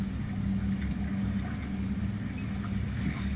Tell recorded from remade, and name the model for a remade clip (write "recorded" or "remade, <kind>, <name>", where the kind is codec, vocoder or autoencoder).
recorded